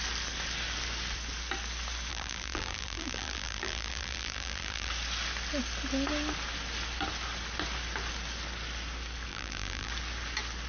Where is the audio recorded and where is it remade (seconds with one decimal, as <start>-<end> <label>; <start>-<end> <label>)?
0.0-2.1 recorded; 2.1-4.9 remade; 4.9-9.3 recorded; 9.3-9.9 remade; 9.9-10.7 recorded